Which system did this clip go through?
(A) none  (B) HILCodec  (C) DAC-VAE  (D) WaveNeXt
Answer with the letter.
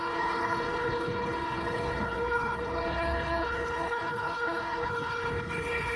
B